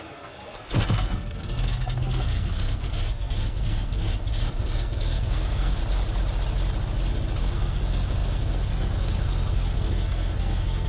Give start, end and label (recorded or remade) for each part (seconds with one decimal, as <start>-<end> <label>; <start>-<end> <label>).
0.0-5.8 remade; 5.8-7.4 recorded; 7.4-10.9 remade